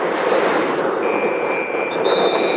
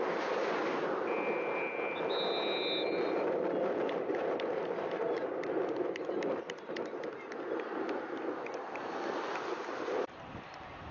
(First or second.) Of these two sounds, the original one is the second